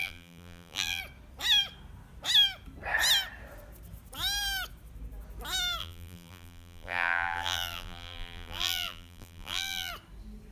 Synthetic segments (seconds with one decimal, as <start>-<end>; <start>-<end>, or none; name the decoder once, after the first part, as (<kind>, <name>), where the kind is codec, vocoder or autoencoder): 0.0-1.0 (vocoder, BigVGAN v2); 5.8-9.9